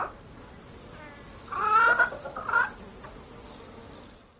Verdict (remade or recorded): recorded